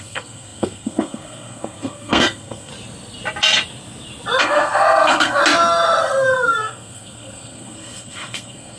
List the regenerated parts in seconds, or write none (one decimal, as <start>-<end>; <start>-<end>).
0.0-2.7; 4.4-5.4; 6.0-8.8